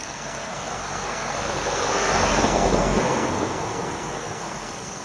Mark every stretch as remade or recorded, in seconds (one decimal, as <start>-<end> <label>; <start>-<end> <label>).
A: 0.0-5.0 remade